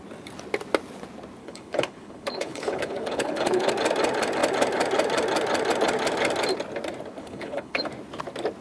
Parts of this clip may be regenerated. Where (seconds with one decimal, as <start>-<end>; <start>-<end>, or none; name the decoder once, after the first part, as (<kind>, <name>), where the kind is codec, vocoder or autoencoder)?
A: 1.4-3.7 (codec, HILCodec); 7.2-7.8